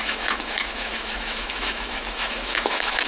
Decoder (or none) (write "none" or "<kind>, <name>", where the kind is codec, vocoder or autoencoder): autoencoder, DAC-VAE